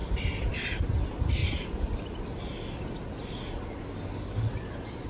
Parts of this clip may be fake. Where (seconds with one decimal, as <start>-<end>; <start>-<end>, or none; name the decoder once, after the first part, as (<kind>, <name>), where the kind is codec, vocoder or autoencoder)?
none